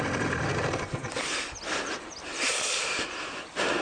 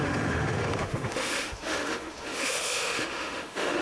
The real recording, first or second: first